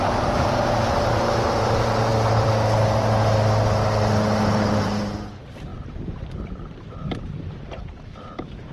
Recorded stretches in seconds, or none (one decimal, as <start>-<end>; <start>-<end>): 2.1-4.5